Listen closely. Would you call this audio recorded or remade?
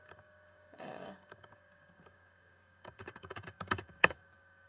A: remade